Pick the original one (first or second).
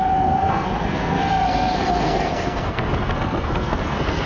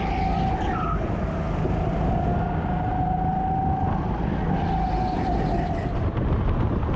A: second